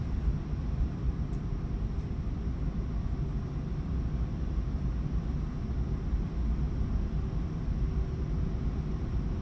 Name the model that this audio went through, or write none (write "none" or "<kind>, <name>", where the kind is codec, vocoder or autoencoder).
none